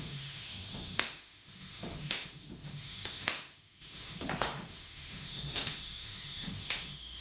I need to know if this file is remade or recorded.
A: remade